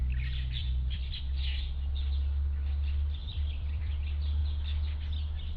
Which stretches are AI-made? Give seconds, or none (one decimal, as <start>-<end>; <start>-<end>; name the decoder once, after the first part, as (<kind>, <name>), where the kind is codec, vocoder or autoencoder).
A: 0.6-1.2 (vocoder, BigVGAN v2); 3.2-3.9